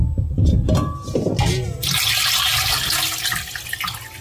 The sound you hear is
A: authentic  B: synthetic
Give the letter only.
A